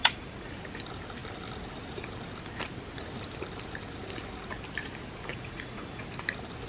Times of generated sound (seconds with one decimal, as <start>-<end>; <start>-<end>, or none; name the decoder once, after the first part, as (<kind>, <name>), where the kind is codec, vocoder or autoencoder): 0.0-0.5 (vocoder, Vocos); 5.3-6.0